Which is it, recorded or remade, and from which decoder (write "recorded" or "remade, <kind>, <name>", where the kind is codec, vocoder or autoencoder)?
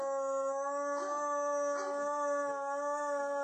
recorded